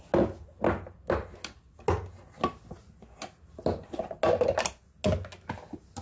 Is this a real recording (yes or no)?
yes